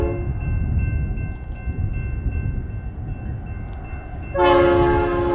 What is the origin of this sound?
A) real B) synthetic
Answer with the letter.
A